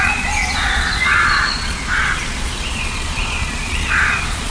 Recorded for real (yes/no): no